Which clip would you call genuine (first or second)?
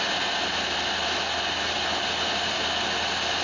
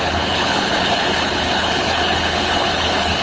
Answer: first